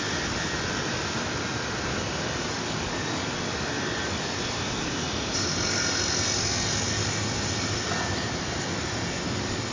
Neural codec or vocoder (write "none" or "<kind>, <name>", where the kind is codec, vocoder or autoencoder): none